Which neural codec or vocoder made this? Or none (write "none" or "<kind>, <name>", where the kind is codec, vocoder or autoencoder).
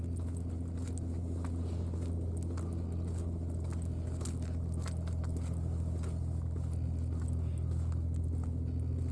none